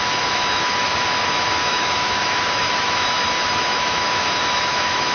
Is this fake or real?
fake